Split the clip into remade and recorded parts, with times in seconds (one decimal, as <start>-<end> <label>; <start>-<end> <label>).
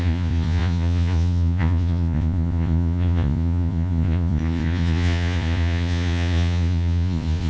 0.0-7.5 remade